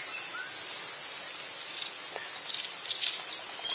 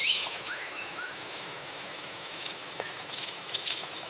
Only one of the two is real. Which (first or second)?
first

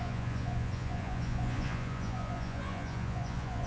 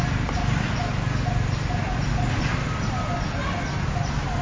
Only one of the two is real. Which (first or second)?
second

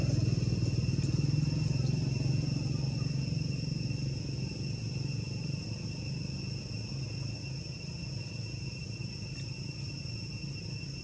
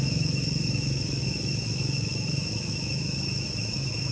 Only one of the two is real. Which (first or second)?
first